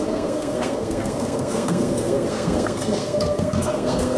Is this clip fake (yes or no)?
yes